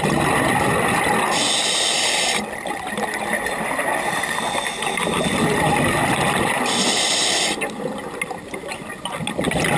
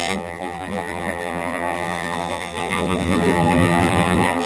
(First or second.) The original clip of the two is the first